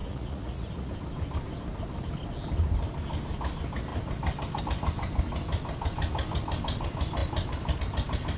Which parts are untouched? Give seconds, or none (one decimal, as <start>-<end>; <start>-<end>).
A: 0.9-8.4